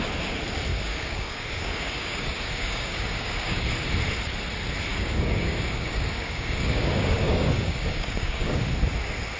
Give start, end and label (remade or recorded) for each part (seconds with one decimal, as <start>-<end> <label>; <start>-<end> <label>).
0.0-0.7 recorded; 0.7-3.7 remade; 3.7-4.9 recorded; 4.9-8.7 remade; 8.7-9.4 recorded